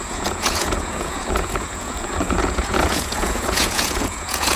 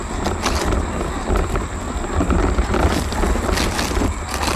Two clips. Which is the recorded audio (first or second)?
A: second